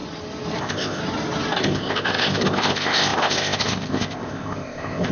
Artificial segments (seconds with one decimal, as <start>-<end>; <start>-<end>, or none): 0.6-1.0; 1.6-5.1